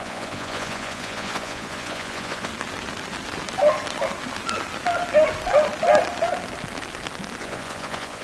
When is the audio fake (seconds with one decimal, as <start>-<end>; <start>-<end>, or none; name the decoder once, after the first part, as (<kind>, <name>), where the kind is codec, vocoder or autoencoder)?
0.0-2.5 (vocoder, Vocos); 7.4-8.2